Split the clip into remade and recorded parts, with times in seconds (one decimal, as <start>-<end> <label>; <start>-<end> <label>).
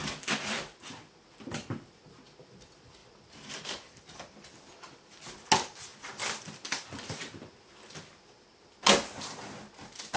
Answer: 0.0-3.0 recorded; 3.0-4.5 remade; 4.5-5.9 recorded; 5.9-7.5 remade; 7.5-10.2 recorded